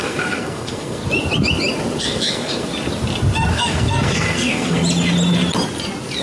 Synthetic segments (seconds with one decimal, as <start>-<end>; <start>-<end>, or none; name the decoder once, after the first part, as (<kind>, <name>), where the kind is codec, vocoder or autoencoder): 0.0-1.0 (codec, SNAC); 2.0-2.7; 3.5-4.8